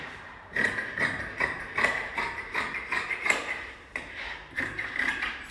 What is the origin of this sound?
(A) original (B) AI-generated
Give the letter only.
B